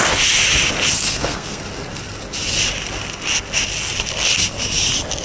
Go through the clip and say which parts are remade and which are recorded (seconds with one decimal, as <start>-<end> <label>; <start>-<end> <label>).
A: 0.0-1.0 recorded; 1.0-1.6 remade; 1.6-5.2 recorded